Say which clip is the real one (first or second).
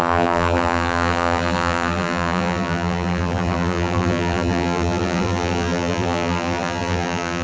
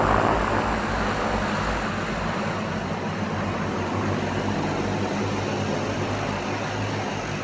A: second